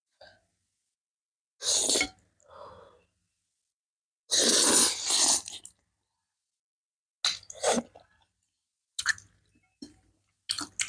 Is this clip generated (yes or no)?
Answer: no